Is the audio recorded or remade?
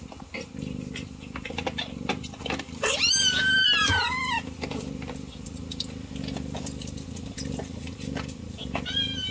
recorded